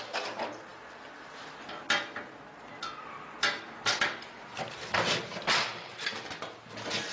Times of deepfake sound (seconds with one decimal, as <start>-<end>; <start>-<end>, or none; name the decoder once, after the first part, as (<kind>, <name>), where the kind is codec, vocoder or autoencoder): none